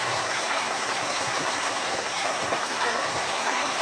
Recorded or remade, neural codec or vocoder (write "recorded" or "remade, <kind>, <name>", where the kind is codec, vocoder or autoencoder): remade, codec, SNAC